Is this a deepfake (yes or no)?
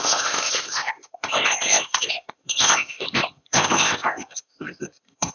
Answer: yes